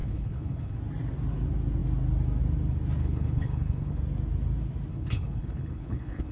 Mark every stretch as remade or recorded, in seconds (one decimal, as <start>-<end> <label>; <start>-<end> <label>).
0.0-0.8 remade; 0.8-3.0 recorded; 3.0-4.0 remade; 4.0-4.9 recorded; 4.9-6.3 remade